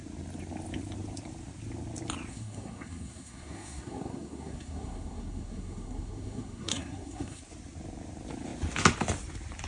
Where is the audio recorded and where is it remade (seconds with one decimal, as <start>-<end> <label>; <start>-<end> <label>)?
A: 0.0-2.3 recorded; 2.3-7.4 remade; 7.4-9.7 recorded